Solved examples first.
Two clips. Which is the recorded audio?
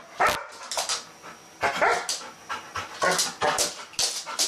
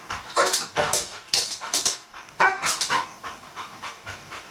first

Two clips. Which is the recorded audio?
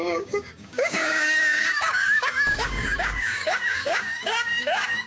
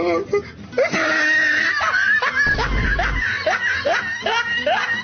second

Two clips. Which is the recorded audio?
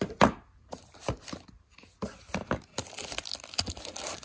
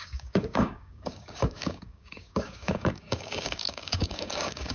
first